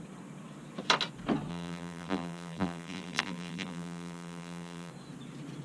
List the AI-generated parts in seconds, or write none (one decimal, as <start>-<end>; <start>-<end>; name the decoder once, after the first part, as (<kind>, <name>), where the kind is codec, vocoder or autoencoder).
1.5-4.9 (vocoder, BigVGAN v2)

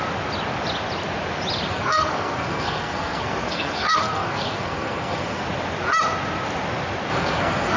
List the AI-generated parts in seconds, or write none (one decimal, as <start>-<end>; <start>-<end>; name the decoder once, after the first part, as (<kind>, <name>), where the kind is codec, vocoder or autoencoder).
1.7-5.4 (codec, SNAC); 7.1-7.8